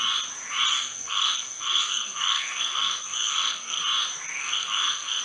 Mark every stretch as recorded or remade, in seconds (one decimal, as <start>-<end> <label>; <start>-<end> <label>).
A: 0.0-0.7 recorded; 0.7-3.8 remade; 3.8-4.4 recorded; 4.4-5.2 remade